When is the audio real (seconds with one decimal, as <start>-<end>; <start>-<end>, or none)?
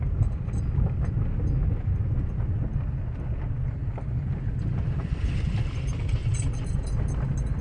0.0-3.8; 5.3-6.2; 6.8-7.6